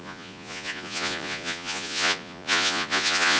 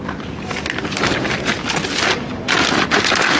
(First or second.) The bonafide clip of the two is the second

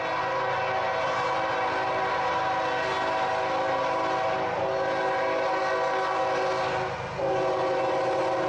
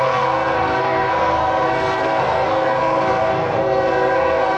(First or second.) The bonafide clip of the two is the first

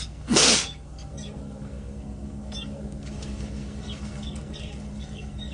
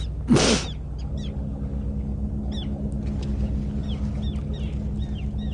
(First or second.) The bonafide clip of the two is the second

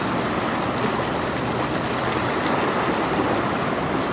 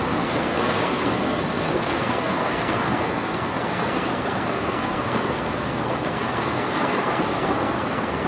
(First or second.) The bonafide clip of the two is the first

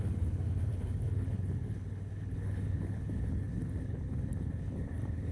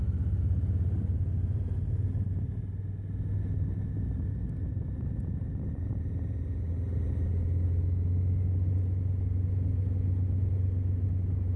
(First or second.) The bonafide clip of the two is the second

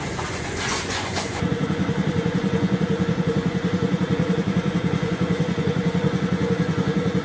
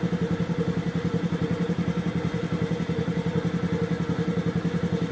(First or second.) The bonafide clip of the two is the second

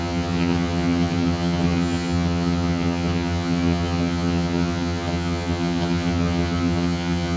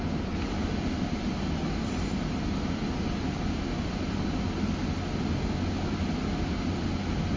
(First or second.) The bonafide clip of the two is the second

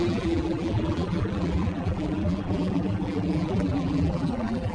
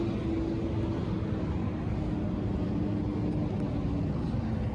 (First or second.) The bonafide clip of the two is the second